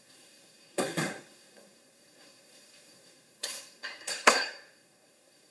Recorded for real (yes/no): no